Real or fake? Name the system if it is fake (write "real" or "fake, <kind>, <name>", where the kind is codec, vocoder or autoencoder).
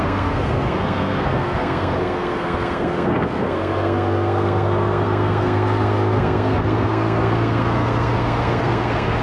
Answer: fake, codec, SNAC